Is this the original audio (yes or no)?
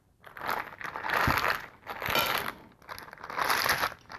yes